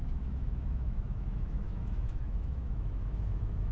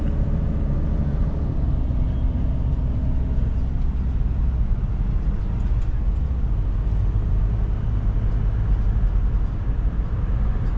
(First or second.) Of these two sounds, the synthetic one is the first